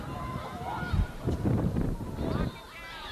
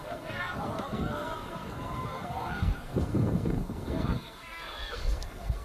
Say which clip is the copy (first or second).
second